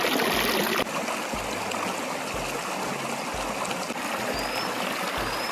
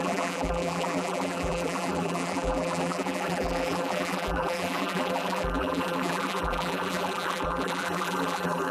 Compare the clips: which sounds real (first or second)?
first